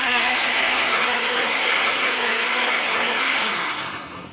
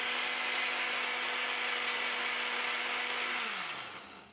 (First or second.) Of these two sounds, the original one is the second